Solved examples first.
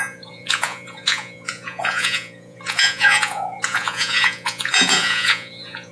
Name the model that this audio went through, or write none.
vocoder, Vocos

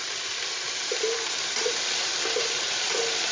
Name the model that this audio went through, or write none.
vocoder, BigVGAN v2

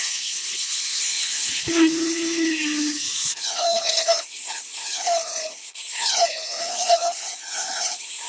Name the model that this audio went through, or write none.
codec, HILCodec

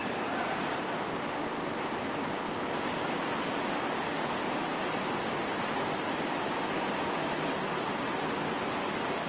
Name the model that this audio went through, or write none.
none